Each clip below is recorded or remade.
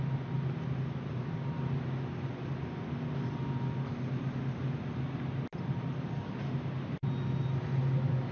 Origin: recorded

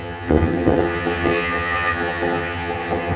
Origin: remade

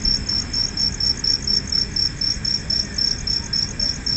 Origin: recorded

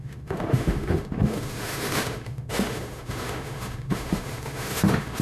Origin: remade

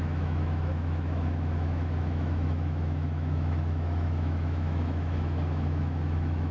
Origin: remade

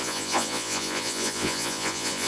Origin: remade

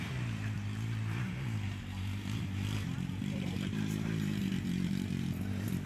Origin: remade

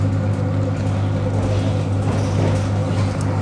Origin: recorded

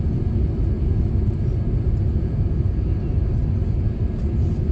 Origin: recorded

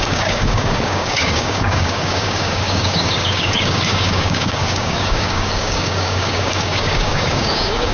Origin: remade